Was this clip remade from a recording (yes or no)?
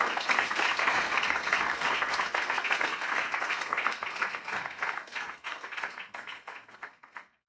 yes